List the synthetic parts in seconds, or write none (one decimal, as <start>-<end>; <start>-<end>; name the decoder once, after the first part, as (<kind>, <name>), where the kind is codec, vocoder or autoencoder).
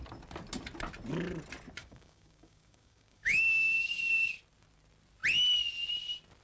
1.8-4.3 (codec, DAC)